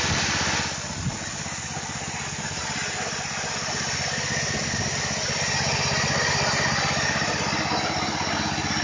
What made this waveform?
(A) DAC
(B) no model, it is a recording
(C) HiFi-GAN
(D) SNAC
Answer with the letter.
B